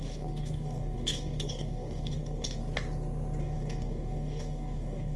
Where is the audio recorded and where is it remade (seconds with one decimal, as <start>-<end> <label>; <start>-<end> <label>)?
0.0-2.6 remade; 2.6-3.4 recorded; 3.4-5.2 remade